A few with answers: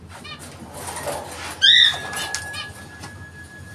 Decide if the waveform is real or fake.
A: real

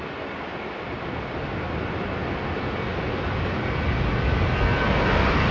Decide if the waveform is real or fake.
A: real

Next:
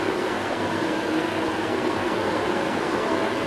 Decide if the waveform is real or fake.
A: fake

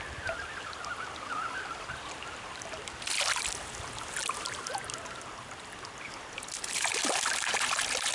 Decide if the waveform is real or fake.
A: real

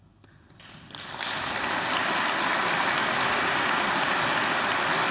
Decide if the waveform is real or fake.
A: real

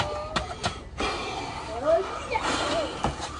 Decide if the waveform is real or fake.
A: real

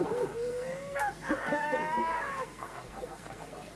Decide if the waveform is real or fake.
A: fake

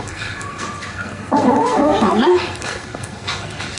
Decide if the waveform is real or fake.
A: fake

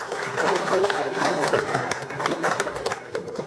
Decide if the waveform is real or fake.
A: fake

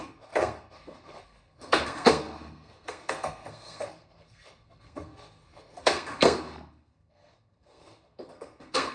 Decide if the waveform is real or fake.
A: fake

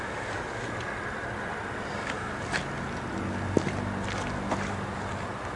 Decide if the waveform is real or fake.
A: real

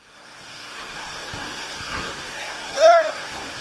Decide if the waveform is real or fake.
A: fake